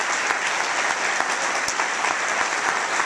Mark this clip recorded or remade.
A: recorded